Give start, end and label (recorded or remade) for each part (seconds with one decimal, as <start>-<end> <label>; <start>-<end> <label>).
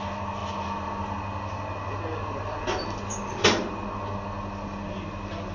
0.0-5.5 recorded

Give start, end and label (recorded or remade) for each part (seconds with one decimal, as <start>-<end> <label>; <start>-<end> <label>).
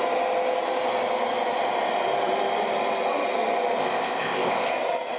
0.0-3.8 recorded; 3.8-4.7 remade; 4.7-5.2 recorded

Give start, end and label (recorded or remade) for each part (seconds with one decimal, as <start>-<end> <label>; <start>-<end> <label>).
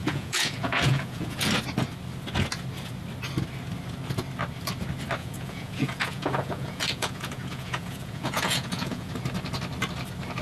0.0-1.5 remade; 1.5-5.2 recorded; 5.2-9.1 remade; 9.1-10.4 recorded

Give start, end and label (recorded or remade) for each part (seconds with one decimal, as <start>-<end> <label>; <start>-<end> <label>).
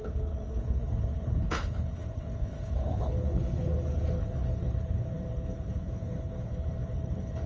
0.0-7.5 remade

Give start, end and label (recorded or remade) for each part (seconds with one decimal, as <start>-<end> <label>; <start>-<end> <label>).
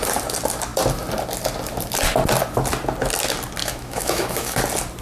0.0-3.6 recorded; 3.6-4.6 remade; 4.6-5.0 recorded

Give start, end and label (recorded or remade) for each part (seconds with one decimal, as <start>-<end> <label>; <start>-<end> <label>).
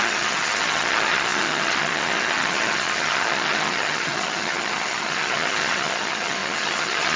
0.0-7.2 remade